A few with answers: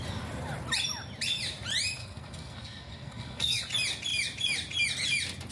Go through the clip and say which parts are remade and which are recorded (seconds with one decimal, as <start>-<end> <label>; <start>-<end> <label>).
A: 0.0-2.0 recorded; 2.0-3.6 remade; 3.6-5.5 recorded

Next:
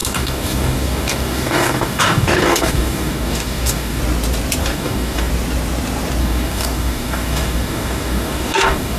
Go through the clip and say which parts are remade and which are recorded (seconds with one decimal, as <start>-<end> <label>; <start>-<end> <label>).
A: 0.0-4.0 remade; 4.0-4.6 recorded; 4.6-5.3 remade; 5.3-6.2 recorded; 6.2-9.0 remade

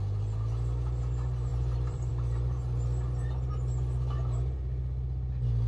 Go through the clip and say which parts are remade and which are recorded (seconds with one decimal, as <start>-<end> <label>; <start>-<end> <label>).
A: 0.0-1.5 recorded; 1.5-2.1 remade; 2.1-5.7 recorded

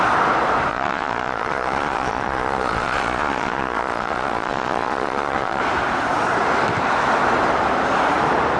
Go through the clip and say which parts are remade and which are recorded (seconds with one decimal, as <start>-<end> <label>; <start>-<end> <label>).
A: 0.0-0.7 recorded; 0.7-5.6 remade; 5.6-8.6 recorded